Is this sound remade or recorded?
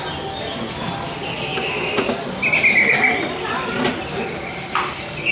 recorded